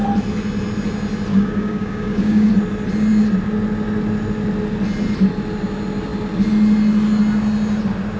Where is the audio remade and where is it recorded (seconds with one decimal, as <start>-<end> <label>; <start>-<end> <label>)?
0.0-1.3 recorded; 1.3-2.5 remade; 2.5-8.2 recorded